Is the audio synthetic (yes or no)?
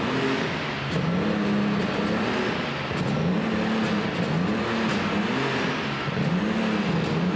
no